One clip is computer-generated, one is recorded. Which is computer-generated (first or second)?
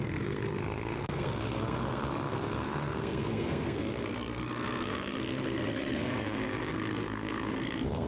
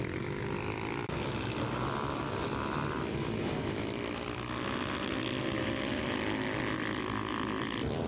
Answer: first